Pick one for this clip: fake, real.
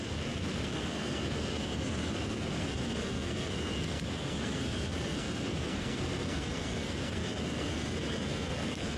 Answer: fake